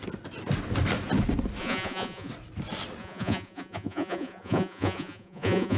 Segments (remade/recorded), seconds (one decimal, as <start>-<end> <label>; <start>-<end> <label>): 0.0-1.6 recorded; 1.6-2.3 remade; 2.3-3.0 recorded; 3.0-5.8 remade